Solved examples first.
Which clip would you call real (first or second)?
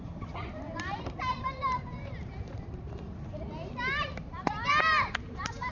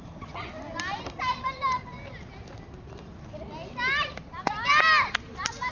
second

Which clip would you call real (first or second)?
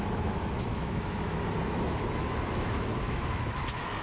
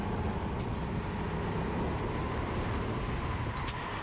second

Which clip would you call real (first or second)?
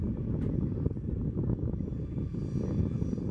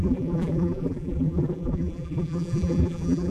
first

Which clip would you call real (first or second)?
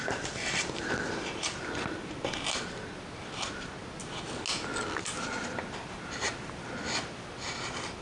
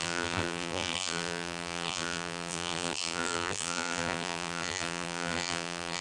first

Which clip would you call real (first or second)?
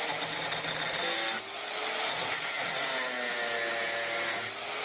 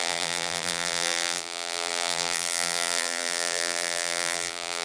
first